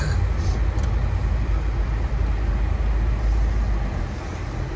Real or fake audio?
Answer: real